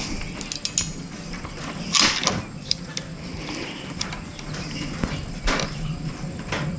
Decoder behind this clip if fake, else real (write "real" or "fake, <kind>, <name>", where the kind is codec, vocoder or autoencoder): real